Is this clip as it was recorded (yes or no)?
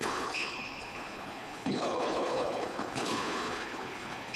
no